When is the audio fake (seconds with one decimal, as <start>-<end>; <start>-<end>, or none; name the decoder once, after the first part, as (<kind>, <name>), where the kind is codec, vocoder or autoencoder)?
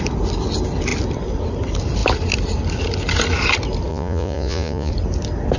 3.9-4.9 (vocoder, Vocos)